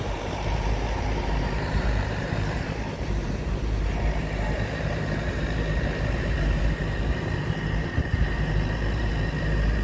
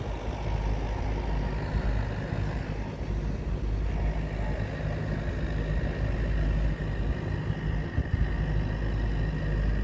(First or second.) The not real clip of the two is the first